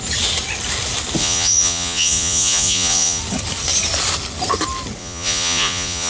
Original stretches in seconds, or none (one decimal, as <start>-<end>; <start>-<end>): 0.0-1.2; 3.2-5.0